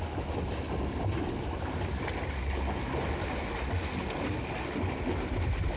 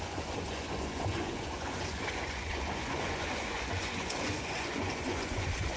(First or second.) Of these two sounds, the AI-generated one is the second